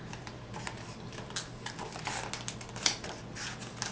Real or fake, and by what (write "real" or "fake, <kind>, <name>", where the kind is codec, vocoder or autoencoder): real